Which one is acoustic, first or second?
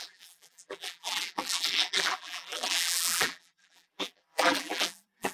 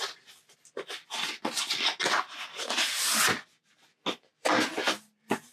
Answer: second